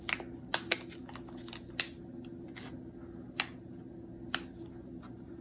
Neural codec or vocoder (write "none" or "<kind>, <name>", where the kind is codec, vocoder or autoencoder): none